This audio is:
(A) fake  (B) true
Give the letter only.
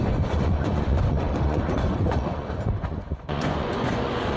A